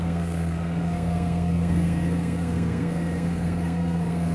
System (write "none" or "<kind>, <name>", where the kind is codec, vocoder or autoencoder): codec, SNAC